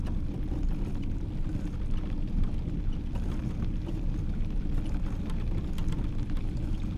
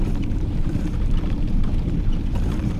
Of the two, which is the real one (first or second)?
first